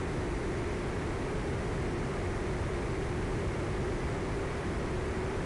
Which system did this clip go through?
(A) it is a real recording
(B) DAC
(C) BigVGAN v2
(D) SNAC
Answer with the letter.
A